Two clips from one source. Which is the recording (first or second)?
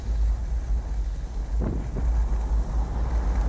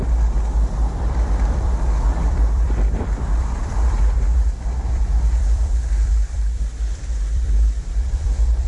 first